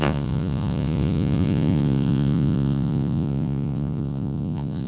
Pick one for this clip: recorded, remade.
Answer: remade